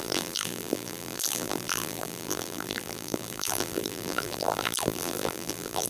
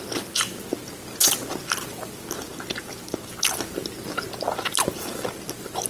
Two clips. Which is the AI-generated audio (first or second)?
first